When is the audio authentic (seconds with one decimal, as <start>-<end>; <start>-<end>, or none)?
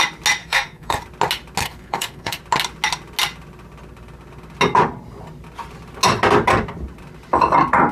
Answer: 0.0-0.4; 1.0-1.6; 2.4-7.9